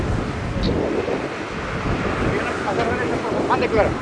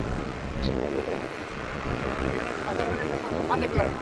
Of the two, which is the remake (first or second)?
second